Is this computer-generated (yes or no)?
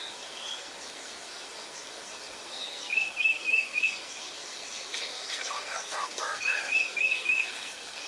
yes